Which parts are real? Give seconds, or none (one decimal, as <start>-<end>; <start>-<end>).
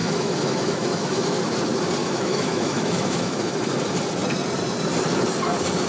1.4-2.0; 3.5-5.9